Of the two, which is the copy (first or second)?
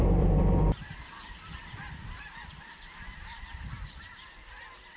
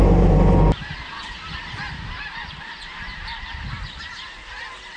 first